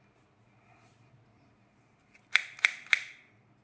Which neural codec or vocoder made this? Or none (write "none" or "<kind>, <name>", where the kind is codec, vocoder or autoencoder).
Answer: none